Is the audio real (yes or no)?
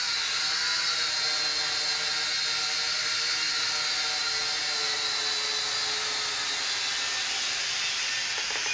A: yes